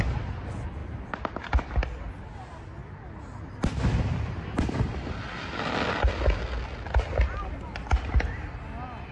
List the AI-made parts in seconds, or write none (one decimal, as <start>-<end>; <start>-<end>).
none